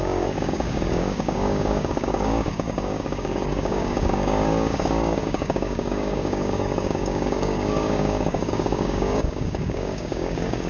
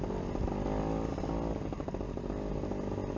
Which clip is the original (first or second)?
second